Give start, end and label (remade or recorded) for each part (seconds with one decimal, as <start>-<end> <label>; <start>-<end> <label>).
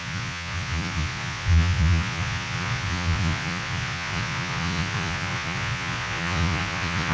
0.0-7.1 remade